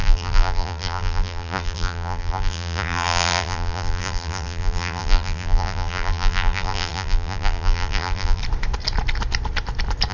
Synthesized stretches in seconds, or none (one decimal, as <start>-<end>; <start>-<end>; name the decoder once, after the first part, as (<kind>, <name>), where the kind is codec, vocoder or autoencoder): 0.0-8.4 (vocoder, BigVGAN v2)